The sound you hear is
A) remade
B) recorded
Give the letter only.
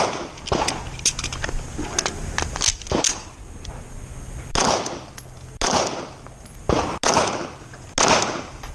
B